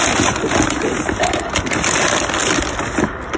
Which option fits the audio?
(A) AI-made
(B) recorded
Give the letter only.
B